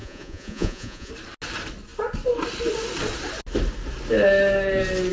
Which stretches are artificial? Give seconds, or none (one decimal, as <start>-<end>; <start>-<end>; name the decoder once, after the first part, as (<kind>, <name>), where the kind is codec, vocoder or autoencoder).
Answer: 0.0-1.1 (vocoder, Vocos)

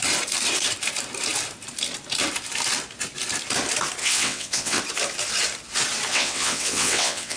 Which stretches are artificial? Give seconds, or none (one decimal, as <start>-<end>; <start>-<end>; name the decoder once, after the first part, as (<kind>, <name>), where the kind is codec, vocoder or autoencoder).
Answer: 4.0-4.8 (vocoder, WaveNeXt); 6.1-7.4

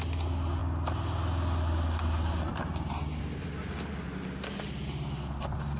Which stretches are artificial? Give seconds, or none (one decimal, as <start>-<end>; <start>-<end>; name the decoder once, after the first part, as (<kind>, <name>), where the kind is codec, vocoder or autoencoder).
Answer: none

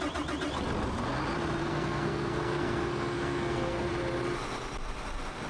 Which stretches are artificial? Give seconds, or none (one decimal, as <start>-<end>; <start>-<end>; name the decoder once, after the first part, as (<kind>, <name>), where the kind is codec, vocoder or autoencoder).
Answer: 1.6-3.9 (codec, SNAC)

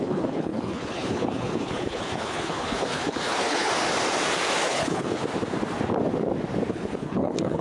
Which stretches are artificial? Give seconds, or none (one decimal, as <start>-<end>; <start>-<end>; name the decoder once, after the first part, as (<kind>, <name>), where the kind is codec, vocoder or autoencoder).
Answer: 0.0-3.7 (codec, HILCodec); 4.7-5.2; 6.7-7.6

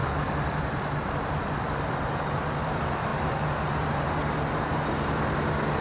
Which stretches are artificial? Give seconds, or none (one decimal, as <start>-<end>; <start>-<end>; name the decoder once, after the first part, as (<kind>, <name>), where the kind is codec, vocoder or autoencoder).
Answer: 0.0-3.1 (vocoder, BigVGAN v2); 4.0-5.8

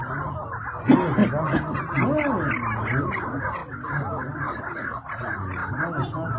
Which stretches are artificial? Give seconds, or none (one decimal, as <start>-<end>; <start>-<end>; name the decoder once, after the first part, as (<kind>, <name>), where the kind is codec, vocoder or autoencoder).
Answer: none

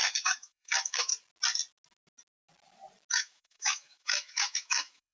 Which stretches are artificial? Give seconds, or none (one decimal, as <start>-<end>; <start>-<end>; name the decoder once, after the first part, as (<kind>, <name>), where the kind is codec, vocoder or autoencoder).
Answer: 0.0-1.1 (autoencoder, DAC-VAE); 3.1-5.1